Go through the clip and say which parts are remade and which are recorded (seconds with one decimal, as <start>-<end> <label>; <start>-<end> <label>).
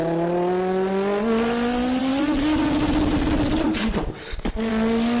0.0-5.2 recorded